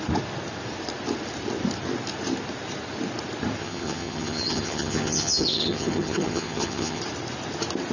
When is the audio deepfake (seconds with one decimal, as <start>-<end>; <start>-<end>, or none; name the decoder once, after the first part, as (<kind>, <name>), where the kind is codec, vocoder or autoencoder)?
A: 3.6-7.0 (vocoder, HiFi-GAN)